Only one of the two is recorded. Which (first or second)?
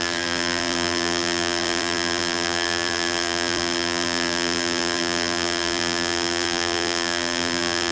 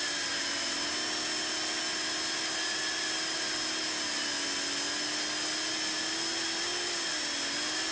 second